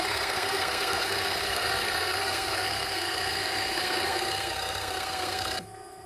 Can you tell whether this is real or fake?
fake